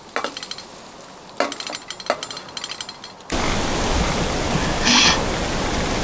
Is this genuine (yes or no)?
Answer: yes